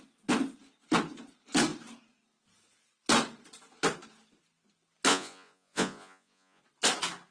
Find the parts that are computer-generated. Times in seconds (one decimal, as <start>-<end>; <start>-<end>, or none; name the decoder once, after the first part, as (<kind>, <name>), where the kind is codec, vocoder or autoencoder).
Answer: 5.1-6.6 (vocoder, Vocos)